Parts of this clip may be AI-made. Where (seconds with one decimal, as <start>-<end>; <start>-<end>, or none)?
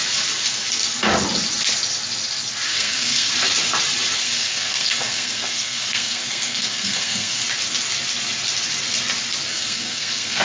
2.7-3.3; 4.2-7.4; 9.5-10.4